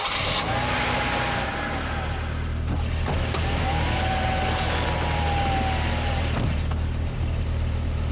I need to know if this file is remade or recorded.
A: recorded